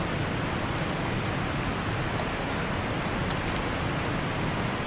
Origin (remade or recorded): recorded